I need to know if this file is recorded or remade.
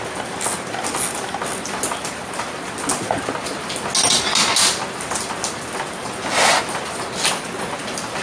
recorded